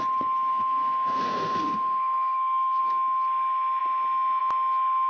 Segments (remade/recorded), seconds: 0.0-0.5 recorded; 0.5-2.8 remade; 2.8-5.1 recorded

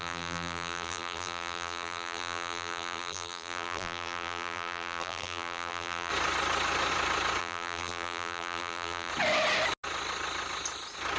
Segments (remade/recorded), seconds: 0.0-6.1 remade; 6.1-7.4 recorded; 7.4-9.1 remade; 9.1-11.2 recorded

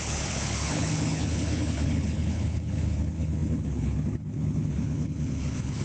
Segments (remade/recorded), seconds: 0.0-5.8 remade

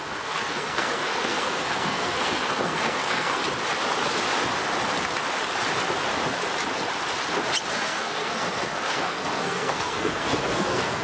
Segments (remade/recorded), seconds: 0.0-3.4 remade; 3.4-7.7 recorded; 7.7-11.0 remade

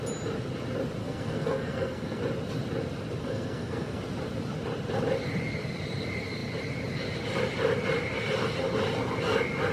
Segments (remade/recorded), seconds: 0.0-1.0 recorded; 1.0-2.2 remade; 2.2-3.2 recorded; 3.2-4.0 remade; 4.0-9.7 recorded

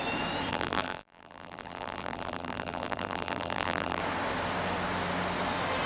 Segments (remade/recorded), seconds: 0.0-0.5 recorded; 0.5-4.0 remade; 4.0-5.9 recorded